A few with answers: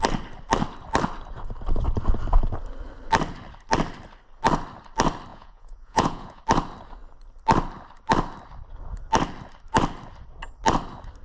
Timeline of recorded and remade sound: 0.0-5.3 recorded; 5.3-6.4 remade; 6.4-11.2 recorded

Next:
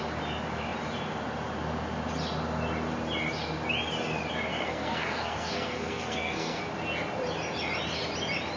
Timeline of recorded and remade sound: 0.0-4.5 recorded; 4.5-6.6 remade; 6.6-8.6 recorded

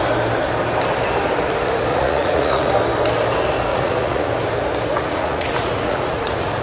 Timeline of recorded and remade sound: 0.0-1.9 recorded; 1.9-2.7 remade; 2.7-3.7 recorded; 3.7-4.3 remade; 4.3-4.9 recorded; 4.9-6.6 remade

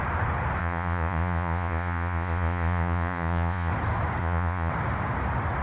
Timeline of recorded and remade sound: 0.0-0.6 recorded; 0.6-3.7 remade; 3.7-4.2 recorded; 4.2-4.7 remade; 4.7-5.6 recorded

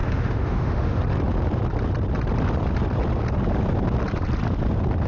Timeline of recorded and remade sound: 0.0-1.0 remade; 1.0-5.1 recorded

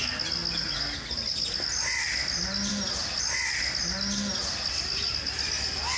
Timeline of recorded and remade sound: 0.0-6.0 recorded

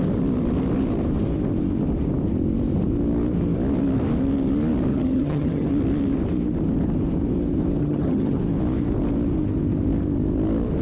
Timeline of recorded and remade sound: 0.0-4.9 recorded; 4.9-5.7 remade; 5.7-7.8 recorded; 7.8-8.4 remade; 8.4-10.8 recorded